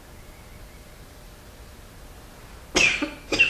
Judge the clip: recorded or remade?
recorded